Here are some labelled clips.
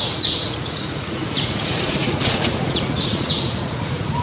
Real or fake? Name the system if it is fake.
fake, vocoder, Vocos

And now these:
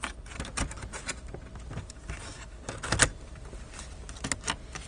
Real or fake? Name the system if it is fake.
real